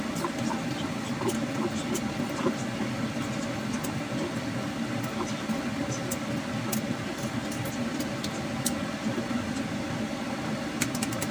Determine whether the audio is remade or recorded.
recorded